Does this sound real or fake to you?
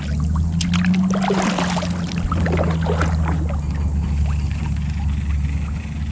real